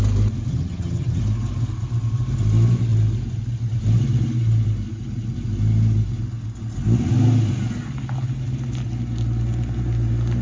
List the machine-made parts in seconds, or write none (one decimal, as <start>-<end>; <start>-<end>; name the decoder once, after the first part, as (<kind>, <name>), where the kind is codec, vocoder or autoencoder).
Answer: 0.5-1.2 (vocoder, HiFi-GAN)